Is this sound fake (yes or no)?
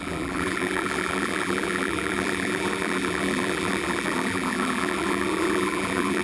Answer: yes